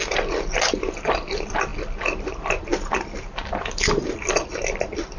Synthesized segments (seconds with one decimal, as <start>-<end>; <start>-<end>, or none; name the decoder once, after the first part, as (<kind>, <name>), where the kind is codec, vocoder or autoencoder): none